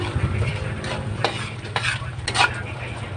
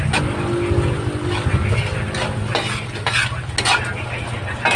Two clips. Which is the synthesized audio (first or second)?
first